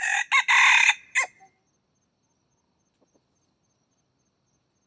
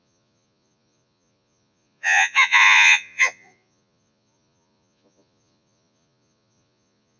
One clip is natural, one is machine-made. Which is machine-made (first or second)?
second